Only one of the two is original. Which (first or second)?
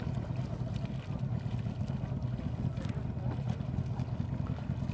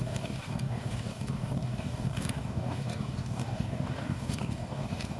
first